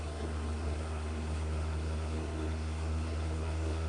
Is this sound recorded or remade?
remade